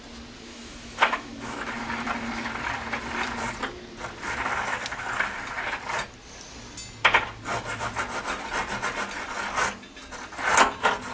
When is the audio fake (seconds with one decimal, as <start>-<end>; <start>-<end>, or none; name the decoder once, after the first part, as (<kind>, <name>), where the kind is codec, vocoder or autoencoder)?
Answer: 0.5-1.7 (autoencoder, DAC-VAE)